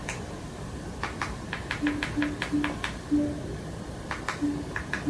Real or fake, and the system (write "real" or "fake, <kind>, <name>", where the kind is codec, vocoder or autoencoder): real